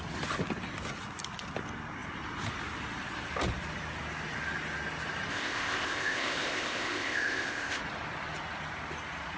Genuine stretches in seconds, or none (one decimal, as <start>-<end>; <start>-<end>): 0.0-5.3; 7.8-9.4